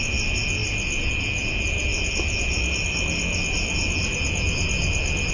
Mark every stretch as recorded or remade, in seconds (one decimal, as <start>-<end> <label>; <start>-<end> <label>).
0.0-5.3 recorded